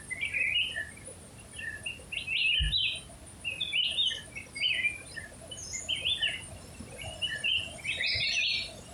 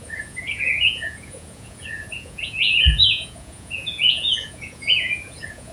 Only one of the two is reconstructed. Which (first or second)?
second